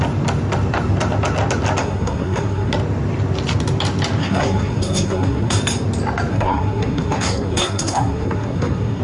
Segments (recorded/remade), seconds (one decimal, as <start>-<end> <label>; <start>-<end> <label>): 0.0-1.8 recorded; 1.8-2.7 remade; 2.7-4.2 recorded; 4.2-5.6 remade; 5.6-6.3 recorded; 6.3-9.0 remade